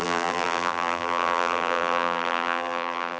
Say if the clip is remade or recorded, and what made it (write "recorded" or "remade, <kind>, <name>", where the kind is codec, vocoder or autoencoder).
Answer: remade, vocoder, BigVGAN v2